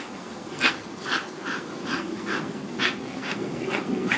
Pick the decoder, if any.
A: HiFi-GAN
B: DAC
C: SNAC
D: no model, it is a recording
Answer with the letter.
C